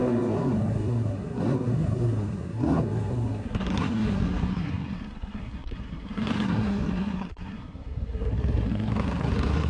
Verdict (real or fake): fake